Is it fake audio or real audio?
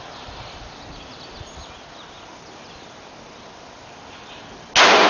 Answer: real